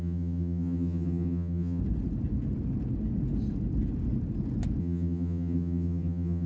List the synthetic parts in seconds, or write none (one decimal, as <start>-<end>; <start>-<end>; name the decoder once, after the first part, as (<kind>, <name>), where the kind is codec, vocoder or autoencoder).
0.0-1.8 (vocoder, HiFi-GAN); 4.8-6.5